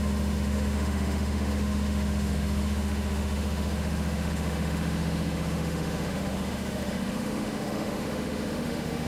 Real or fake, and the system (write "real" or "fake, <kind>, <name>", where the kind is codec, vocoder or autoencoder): fake, autoencoder, DAC-VAE